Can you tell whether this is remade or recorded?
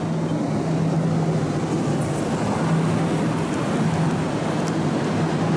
recorded